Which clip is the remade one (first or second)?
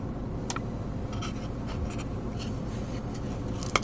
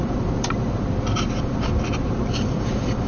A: second